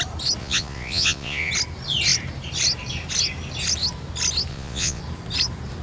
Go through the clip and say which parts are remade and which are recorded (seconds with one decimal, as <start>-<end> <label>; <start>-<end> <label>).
0.0-0.4 recorded; 0.4-1.5 remade; 1.5-4.5 recorded; 4.5-5.0 remade; 5.0-5.8 recorded